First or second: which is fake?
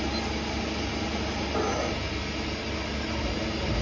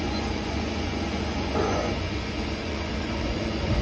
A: second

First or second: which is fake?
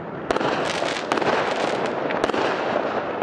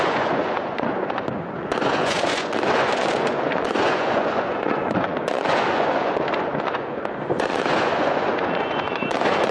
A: second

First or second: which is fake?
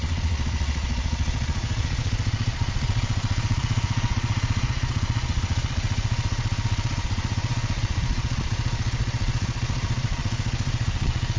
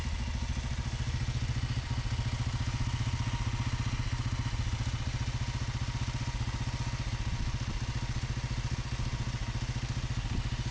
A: first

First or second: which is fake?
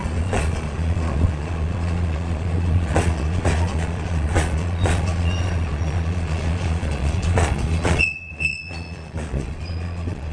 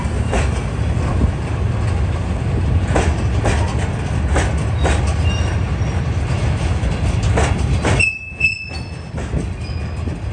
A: first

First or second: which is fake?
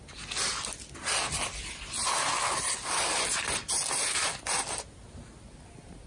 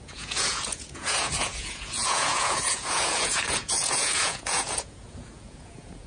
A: second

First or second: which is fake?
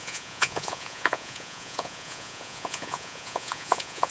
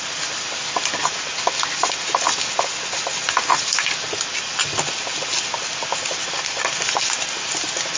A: first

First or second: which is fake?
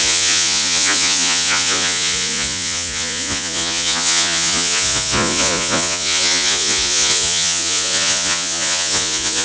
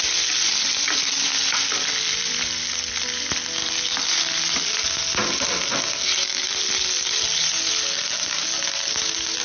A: first